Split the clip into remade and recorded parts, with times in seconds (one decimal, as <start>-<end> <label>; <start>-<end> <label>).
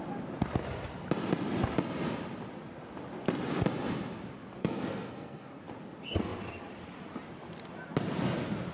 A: 0.0-4.6 recorded; 4.6-5.6 remade; 5.6-8.7 recorded